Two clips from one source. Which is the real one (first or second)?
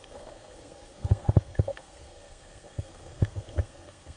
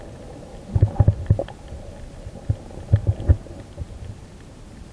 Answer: second